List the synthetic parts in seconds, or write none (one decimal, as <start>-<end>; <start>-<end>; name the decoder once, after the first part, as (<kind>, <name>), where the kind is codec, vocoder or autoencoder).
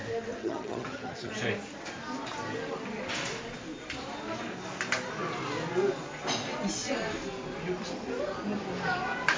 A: 0.4-1.3 (vocoder, HiFi-GAN)